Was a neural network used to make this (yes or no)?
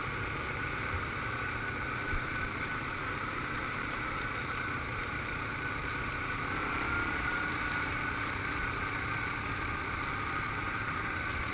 yes